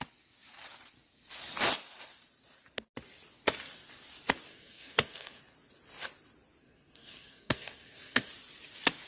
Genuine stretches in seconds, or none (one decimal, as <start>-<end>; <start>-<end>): 0.0-4.5; 5.4-6.6; 8.3-9.1